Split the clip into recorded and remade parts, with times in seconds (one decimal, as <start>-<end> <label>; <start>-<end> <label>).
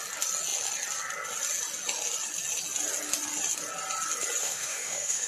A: 0.0-4.4 recorded; 4.4-5.3 remade